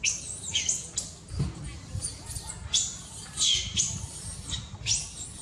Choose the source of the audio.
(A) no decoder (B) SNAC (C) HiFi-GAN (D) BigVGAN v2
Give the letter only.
A